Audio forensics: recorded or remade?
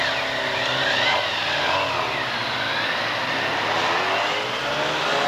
recorded